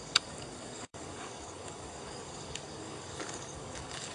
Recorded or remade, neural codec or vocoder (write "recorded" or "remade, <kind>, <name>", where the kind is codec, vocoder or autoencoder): remade, codec, DAC